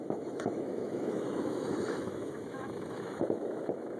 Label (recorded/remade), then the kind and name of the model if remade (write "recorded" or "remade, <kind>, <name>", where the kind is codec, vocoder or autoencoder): remade, autoencoder, DAC-VAE